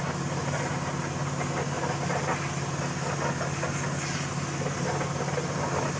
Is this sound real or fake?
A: real